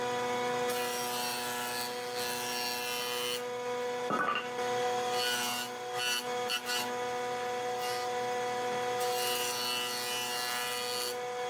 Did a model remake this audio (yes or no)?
no